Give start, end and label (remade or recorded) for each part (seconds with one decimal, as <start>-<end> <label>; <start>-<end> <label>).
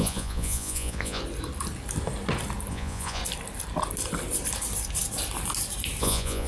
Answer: 0.0-1.2 remade; 1.2-2.7 recorded; 2.7-3.2 remade; 3.2-6.0 recorded; 6.0-6.5 remade